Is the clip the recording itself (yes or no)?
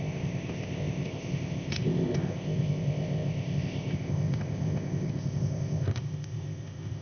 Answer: no